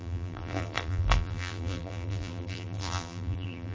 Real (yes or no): no